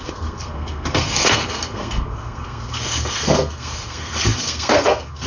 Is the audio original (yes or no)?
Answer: no